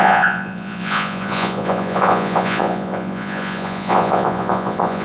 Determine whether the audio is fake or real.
fake